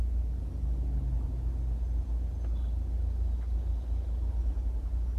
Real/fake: real